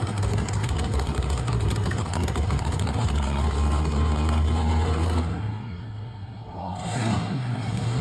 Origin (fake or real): fake